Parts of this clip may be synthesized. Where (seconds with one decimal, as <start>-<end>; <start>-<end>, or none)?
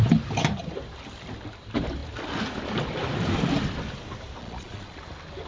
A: 4.4-5.0